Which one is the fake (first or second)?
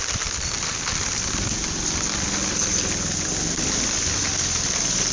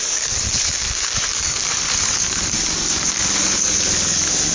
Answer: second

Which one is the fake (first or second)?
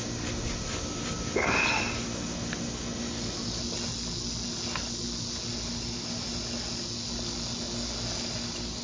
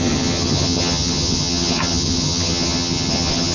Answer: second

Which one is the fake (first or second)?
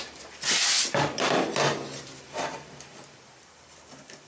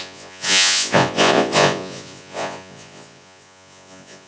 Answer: second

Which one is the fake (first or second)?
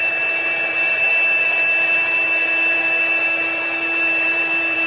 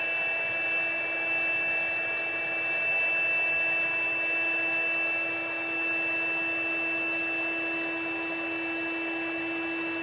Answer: first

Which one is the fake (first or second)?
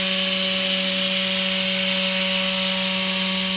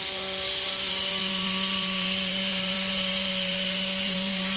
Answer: second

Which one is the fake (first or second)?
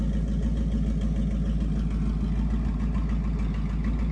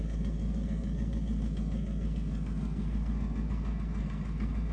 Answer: second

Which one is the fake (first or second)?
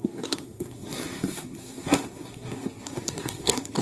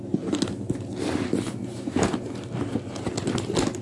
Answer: first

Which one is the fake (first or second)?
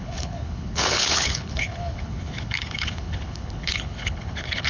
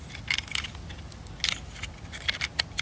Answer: first